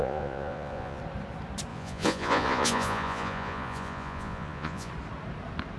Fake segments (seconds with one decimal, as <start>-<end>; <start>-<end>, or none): 0.0-1.0; 1.7-4.9